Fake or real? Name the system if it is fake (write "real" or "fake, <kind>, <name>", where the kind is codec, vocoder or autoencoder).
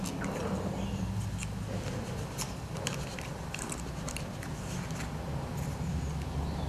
real